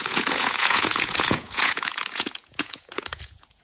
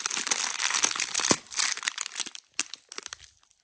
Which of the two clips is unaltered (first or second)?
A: second